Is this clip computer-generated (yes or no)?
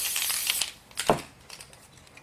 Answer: no